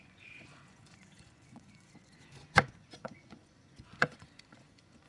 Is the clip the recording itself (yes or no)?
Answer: no